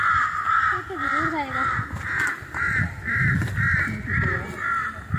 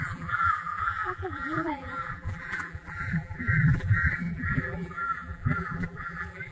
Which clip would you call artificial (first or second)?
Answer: second